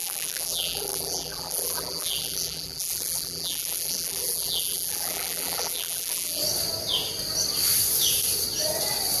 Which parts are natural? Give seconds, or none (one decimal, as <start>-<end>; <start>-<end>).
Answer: 6.4-9.2